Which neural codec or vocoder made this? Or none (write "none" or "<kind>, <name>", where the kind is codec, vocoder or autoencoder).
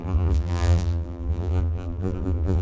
vocoder, BigVGAN v2